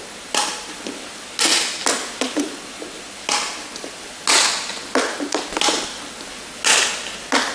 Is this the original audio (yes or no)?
yes